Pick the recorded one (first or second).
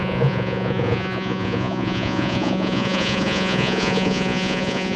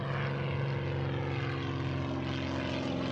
second